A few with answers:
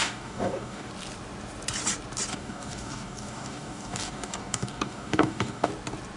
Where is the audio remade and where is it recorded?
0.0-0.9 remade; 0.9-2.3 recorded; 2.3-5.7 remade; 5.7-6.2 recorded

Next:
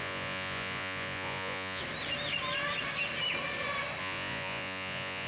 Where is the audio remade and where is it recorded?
0.0-1.8 remade; 1.8-4.0 recorded; 4.0-5.3 remade